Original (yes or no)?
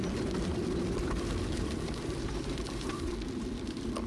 no